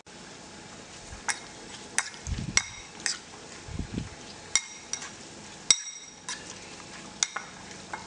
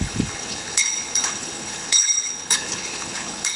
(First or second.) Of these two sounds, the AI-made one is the second